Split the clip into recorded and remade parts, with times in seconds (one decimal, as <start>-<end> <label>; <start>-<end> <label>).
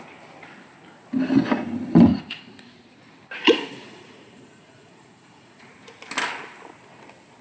0.0-2.1 recorded; 2.1-2.7 remade; 2.7-3.4 recorded; 3.4-5.7 remade; 5.7-7.4 recorded